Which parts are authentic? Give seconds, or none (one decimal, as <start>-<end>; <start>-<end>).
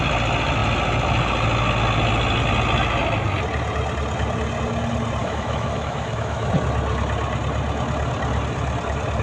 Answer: 0.0-5.2; 6.5-9.2